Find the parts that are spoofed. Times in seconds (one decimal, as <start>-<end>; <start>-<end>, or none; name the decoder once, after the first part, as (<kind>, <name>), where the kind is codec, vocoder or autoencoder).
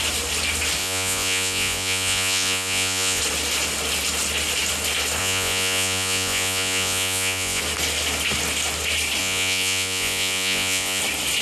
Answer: 0.8-3.2 (vocoder, Vocos); 5.2-7.6; 9.2-11.0